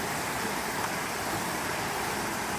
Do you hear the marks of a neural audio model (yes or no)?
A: yes